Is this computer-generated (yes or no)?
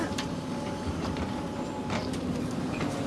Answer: yes